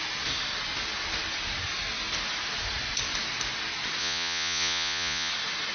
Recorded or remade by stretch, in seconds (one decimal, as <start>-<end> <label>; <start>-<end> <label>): 0.0-4.0 recorded; 4.0-5.3 remade; 5.3-5.7 recorded

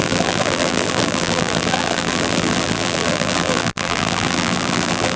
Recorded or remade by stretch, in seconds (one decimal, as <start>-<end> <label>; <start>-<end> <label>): 0.0-5.2 remade

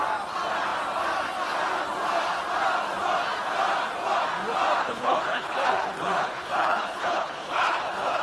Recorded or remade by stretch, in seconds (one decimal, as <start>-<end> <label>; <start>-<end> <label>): 0.0-4.8 recorded; 4.8-8.2 remade

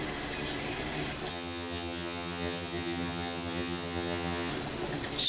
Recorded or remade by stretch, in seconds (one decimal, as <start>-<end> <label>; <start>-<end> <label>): 0.0-1.3 recorded; 1.3-4.5 remade; 4.5-5.3 recorded

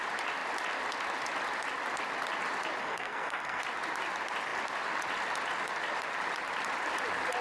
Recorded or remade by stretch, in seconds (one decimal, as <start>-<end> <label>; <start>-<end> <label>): 0.0-2.8 recorded; 2.8-3.6 remade; 3.6-7.4 recorded